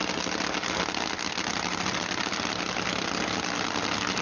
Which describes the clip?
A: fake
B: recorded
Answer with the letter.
B